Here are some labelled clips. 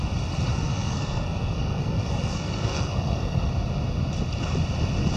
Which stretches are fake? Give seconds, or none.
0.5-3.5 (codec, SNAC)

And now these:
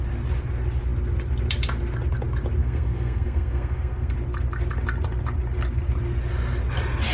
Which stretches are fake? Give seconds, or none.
2.6-4.1 (codec, SNAC)

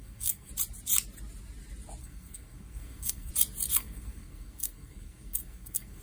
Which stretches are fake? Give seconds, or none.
0.0-0.5 (codec, SNAC); 2.0-3.3; 3.7-6.0

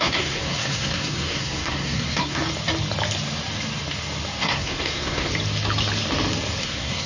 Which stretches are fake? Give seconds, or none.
0.0-2.4 (codec, SNAC); 4.4-5.3; 6.6-7.1

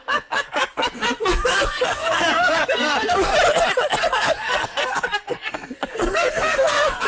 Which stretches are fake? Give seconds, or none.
0.0-3.3 (codec, SNAC); 4.0-7.1

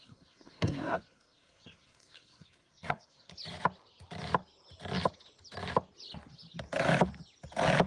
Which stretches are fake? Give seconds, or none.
0.0-3.3 (codec, SNAC)